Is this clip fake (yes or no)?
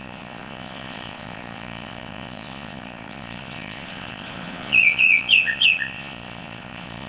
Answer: yes